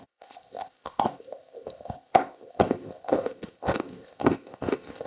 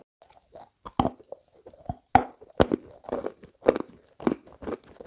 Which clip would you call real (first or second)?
second